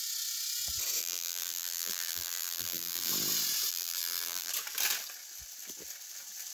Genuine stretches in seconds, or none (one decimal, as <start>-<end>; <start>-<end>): 0.0-1.0; 3.1-3.7; 4.5-6.5